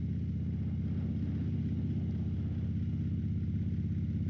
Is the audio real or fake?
real